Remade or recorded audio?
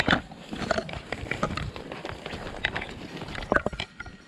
recorded